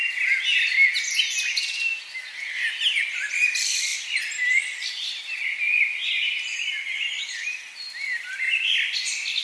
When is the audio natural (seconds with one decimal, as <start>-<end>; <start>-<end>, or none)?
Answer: 0.0-3.9; 7.3-9.4